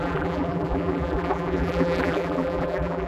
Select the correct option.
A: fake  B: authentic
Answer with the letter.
A